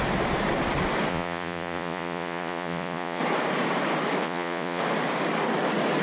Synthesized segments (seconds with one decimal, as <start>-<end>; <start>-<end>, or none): 1.1-3.2; 4.2-4.8